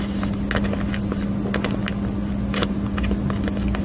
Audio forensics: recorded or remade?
recorded